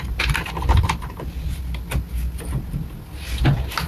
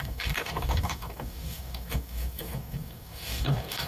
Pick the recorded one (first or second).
first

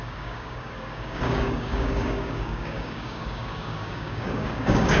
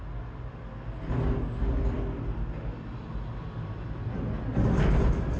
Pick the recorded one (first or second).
second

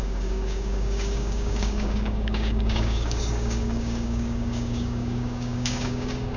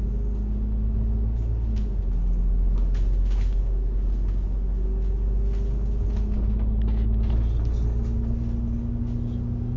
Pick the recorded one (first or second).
second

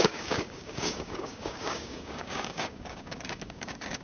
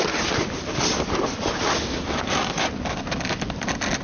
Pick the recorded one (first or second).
second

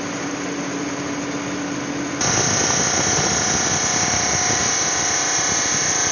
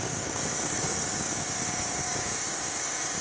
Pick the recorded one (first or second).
first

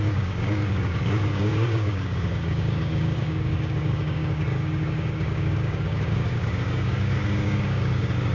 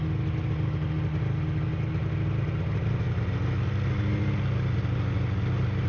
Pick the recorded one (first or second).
second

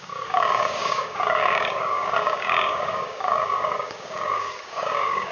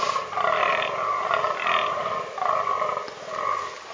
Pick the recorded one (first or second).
second